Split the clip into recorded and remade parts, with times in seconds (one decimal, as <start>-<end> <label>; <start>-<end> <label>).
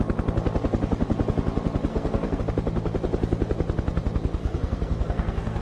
0.0-1.9 recorded; 1.9-2.4 remade; 2.4-4.4 recorded; 4.4-5.6 remade